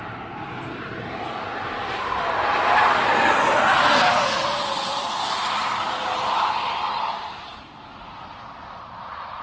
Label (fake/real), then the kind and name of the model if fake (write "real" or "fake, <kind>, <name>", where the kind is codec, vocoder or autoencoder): real